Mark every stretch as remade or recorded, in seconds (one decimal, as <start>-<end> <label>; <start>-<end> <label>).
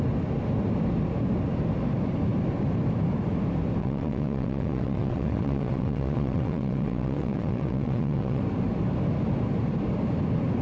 0.0-3.8 recorded; 3.8-8.4 remade; 8.4-10.6 recorded